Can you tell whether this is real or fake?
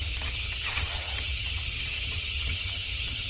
fake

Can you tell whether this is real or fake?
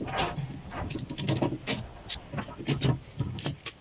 real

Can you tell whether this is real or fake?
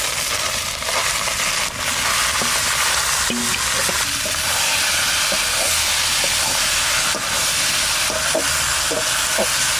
real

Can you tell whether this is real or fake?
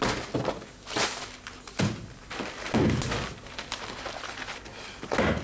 real